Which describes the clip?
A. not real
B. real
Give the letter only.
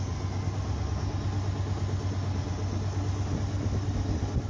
B